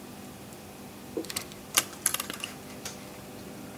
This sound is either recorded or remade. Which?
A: remade